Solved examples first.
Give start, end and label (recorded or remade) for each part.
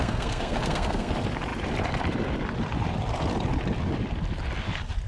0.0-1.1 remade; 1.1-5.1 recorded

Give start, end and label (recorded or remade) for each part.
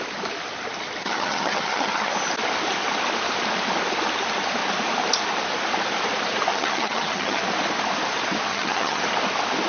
0.0-1.0 recorded; 1.0-2.1 remade; 2.1-6.5 recorded; 6.5-7.4 remade; 7.4-8.5 recorded; 8.5-9.0 remade; 9.0-9.7 recorded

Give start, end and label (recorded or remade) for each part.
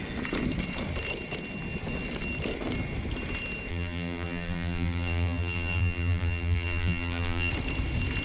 0.0-3.7 recorded; 3.7-7.5 remade; 7.5-8.2 recorded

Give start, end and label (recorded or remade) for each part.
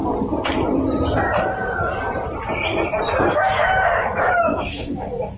0.0-3.2 recorded; 3.2-5.4 remade